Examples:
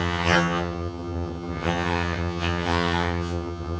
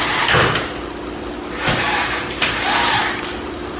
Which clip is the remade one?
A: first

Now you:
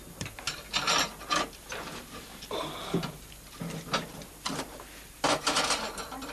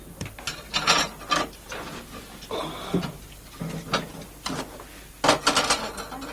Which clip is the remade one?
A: first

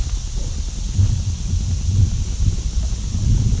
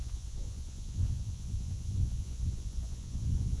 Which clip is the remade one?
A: second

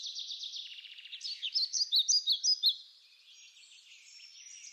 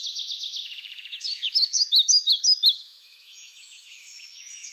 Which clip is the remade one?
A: second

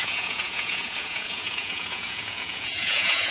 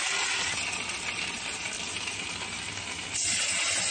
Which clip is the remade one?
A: first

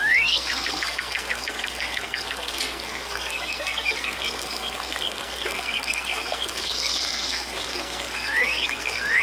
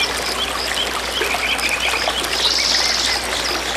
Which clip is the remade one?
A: first